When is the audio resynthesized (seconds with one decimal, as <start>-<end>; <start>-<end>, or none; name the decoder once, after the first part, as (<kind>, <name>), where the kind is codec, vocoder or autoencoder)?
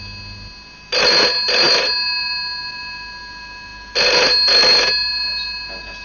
none